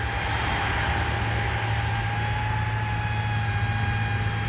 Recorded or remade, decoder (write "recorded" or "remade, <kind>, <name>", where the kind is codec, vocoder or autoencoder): recorded